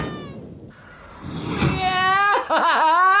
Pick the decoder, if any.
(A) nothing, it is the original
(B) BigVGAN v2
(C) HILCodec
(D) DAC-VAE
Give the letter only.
A